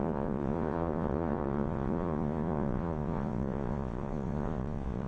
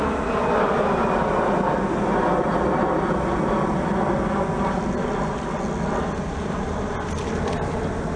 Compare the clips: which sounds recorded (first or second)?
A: second